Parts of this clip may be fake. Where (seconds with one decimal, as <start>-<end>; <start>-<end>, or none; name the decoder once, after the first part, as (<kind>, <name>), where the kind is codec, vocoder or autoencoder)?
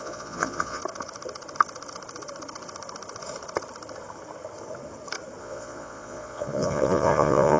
0.0-0.8 (vocoder, Vocos); 5.4-7.6